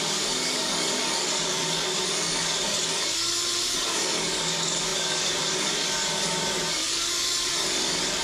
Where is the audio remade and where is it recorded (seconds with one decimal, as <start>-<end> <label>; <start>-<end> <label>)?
0.0-8.2 remade